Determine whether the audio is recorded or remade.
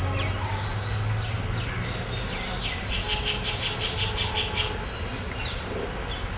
recorded